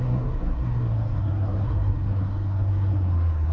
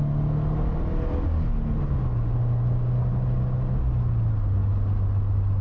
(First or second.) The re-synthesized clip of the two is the first